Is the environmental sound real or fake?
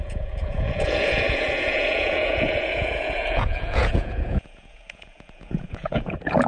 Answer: fake